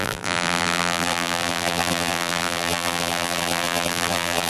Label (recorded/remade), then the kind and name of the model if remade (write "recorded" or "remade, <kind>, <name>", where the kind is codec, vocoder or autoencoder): remade, vocoder, BigVGAN v2